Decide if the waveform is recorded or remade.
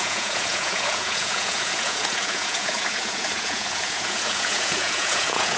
remade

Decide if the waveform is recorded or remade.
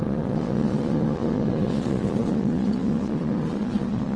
remade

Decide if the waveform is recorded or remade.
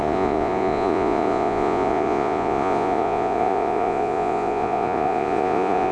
remade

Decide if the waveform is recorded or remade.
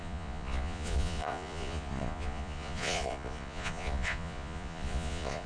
remade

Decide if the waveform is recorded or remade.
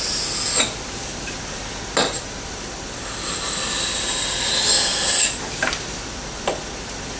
recorded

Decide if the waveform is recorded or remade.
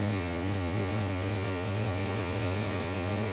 remade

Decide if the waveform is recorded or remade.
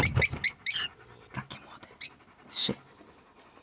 recorded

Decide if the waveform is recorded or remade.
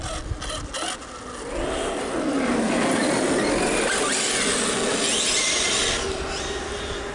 recorded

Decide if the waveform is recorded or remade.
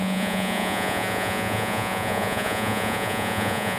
remade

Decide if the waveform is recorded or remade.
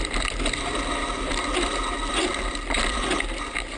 recorded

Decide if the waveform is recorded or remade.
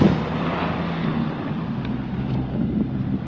recorded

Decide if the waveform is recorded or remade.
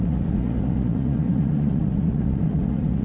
remade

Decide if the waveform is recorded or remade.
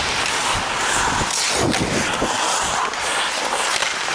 recorded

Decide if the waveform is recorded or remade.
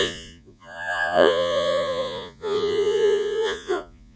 remade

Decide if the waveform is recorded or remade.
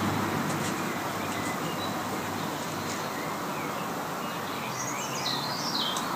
recorded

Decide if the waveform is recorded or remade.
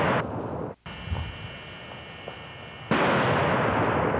recorded